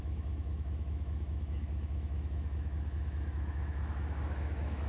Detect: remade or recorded remade